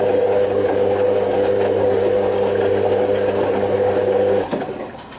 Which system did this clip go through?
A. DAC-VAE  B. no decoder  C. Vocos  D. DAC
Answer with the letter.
B